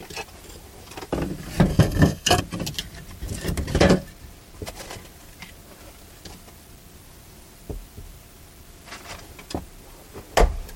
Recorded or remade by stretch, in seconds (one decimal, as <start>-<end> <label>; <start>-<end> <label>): 0.0-1.7 recorded; 1.7-2.4 remade; 2.4-10.8 recorded